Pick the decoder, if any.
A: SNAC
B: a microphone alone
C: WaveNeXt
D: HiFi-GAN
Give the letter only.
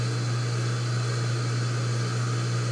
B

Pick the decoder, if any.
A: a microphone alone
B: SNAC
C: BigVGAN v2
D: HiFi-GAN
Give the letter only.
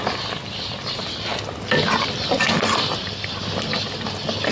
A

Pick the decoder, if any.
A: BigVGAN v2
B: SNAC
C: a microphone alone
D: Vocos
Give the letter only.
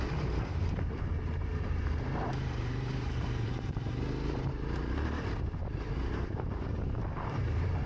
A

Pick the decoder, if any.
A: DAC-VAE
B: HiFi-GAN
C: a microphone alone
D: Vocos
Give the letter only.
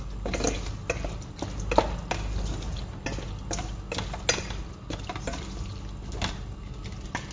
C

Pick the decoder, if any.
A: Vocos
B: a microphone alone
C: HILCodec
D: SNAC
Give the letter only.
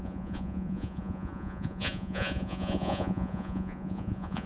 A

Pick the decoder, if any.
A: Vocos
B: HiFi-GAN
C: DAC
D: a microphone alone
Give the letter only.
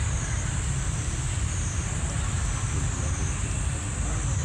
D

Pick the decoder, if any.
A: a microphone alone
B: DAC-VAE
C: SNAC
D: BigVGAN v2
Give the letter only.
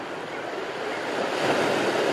A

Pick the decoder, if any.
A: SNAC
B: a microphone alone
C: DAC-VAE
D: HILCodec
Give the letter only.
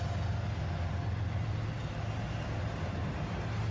B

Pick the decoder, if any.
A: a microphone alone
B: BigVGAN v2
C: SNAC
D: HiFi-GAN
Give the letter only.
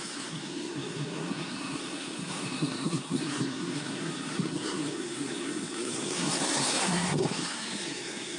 C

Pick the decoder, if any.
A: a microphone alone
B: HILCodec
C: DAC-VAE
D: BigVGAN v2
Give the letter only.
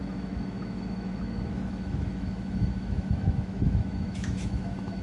C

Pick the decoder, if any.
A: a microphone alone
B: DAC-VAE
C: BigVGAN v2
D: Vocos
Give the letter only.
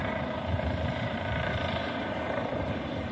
C